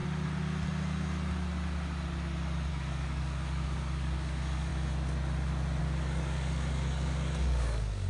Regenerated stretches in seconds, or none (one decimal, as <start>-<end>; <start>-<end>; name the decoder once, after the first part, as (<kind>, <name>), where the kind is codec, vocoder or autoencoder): 2.7-4.7 (codec, DAC); 5.8-8.1